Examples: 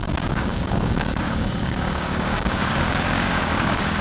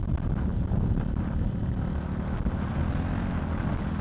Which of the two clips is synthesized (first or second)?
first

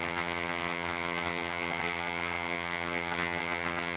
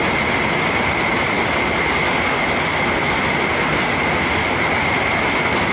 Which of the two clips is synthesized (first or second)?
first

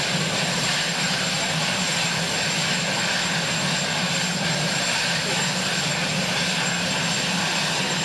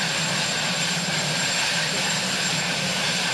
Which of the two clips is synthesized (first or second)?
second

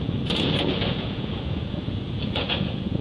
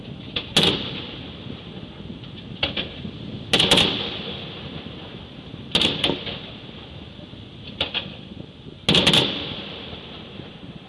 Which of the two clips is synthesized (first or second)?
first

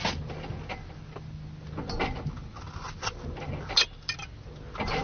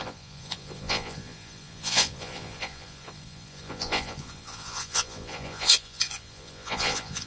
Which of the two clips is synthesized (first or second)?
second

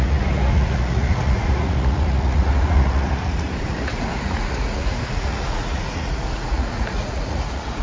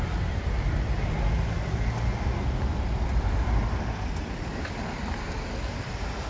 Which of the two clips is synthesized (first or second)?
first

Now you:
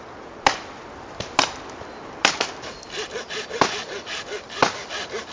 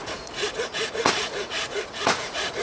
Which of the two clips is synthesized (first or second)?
second